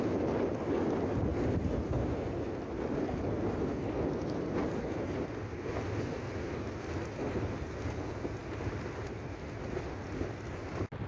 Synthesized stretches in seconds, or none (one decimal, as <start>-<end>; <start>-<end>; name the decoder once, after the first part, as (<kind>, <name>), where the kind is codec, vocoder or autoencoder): none